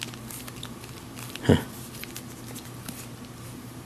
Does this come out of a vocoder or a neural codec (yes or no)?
no